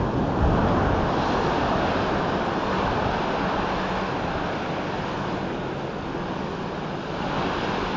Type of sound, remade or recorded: recorded